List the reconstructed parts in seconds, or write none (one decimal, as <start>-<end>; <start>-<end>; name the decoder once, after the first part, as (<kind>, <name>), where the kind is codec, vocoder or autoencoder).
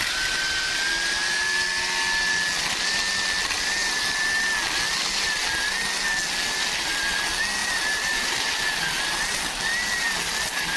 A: 7.6-9.0 (vocoder, BigVGAN v2)